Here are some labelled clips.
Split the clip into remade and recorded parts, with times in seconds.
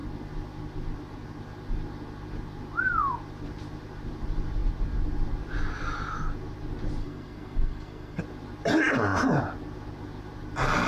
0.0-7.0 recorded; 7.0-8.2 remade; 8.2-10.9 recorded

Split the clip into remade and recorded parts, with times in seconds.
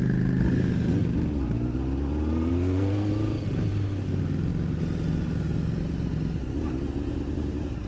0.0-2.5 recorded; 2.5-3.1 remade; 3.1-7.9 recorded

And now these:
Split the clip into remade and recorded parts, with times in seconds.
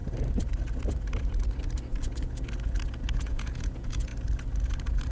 0.0-3.1 recorded; 3.1-4.1 remade; 4.1-5.1 recorded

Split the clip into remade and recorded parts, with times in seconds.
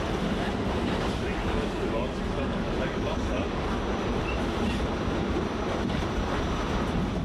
0.0-1.4 recorded; 1.4-3.7 remade; 3.7-7.2 recorded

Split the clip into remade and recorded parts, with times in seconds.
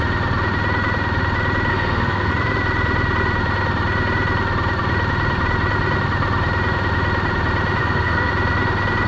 0.0-1.7 recorded; 1.7-2.3 remade; 2.3-7.8 recorded; 7.8-8.3 remade; 8.3-9.1 recorded